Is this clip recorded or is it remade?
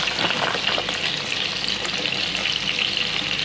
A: recorded